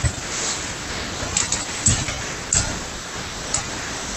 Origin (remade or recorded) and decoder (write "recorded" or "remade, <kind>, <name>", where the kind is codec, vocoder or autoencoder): recorded